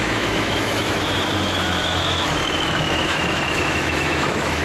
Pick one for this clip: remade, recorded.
remade